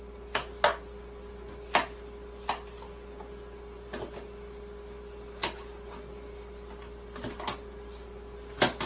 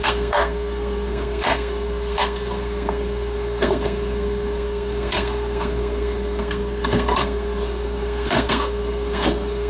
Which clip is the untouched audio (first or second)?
first